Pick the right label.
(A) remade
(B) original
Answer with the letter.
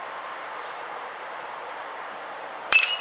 A